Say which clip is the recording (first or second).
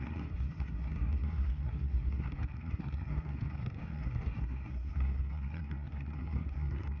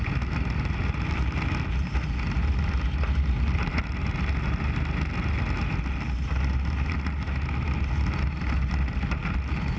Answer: second